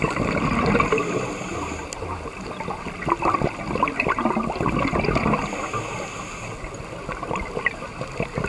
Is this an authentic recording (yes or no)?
yes